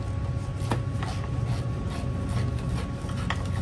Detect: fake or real real